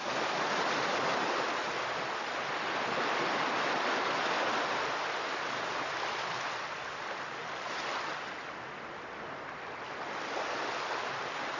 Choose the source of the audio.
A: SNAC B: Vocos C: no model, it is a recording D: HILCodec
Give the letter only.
C